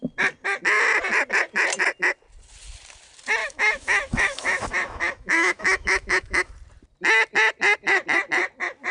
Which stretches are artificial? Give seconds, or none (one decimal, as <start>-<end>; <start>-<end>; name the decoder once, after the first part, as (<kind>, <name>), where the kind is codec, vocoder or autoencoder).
3.4-6.5 (autoencoder, DAC-VAE)